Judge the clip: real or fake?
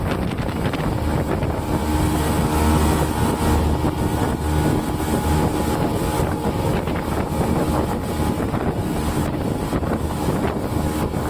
real